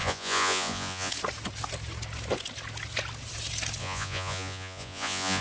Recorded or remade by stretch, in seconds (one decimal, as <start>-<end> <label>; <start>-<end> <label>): 0.0-1.1 remade; 1.1-3.8 recorded; 3.8-5.4 remade